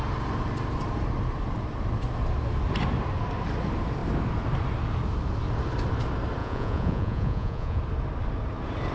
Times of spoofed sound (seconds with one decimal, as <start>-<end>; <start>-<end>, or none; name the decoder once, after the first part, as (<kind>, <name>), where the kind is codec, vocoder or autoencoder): 6.4-7.8 (vocoder, Vocos)